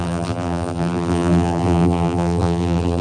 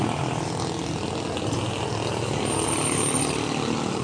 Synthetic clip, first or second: first